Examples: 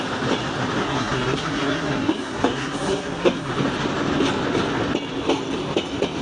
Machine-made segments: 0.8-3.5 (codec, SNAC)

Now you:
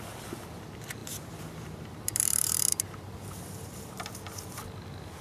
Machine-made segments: 1.0-4.1 (vocoder, BigVGAN v2)

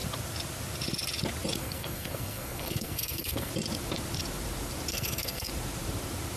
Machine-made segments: 1.6-3.5 (codec, SNAC); 4.9-5.5

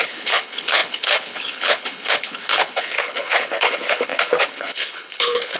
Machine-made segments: 0.0-5.6 (codec, HILCodec)

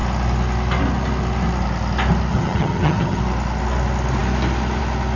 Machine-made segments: 2.3-3.2 (vocoder, HiFi-GAN)

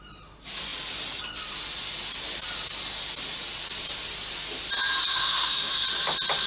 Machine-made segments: 5.1-5.7 (codec, SNAC)

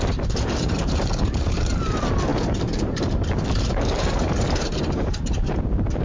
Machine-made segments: 0.0-6.0 (vocoder, BigVGAN v2)

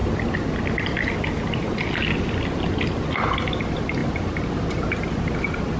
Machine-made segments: none